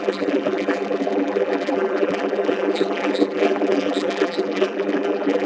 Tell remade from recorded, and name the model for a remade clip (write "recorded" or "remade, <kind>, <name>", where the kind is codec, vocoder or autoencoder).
remade, vocoder, BigVGAN v2